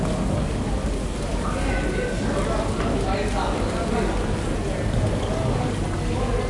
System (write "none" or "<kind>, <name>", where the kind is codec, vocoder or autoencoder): none